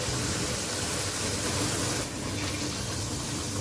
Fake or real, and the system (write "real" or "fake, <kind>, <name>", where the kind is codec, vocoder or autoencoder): real